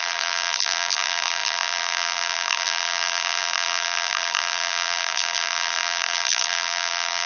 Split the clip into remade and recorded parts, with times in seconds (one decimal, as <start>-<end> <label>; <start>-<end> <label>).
0.0-7.3 remade